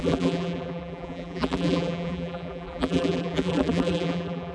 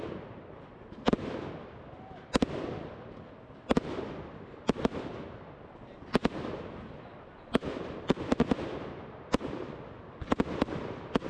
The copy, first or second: first